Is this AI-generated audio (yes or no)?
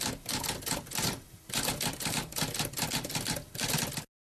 no